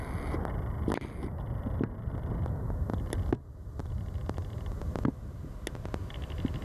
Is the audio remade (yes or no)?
no